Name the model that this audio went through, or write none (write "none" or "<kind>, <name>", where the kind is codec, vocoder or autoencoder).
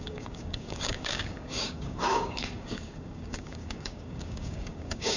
codec, DAC